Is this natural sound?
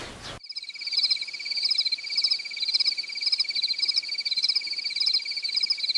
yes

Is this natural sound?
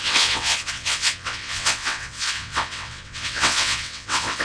no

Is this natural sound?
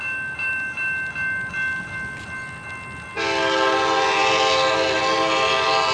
yes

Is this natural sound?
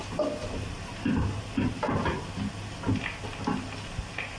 yes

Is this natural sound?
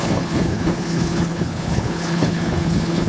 no